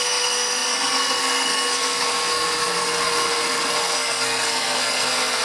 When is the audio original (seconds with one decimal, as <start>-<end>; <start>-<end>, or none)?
none